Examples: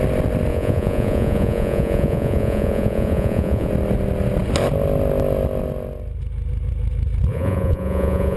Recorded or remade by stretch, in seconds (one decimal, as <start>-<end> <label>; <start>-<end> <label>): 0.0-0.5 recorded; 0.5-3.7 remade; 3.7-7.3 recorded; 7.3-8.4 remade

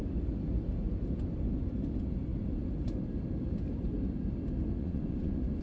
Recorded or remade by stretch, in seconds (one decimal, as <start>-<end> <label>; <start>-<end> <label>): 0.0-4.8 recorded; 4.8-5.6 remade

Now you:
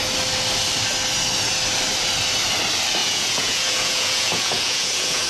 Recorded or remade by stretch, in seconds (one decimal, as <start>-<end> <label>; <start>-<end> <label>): 0.0-3.0 recorded; 3.0-5.3 remade

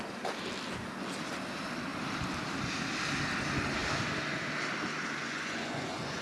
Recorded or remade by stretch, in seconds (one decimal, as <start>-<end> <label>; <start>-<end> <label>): 0.0-5.2 recorded; 5.2-6.2 remade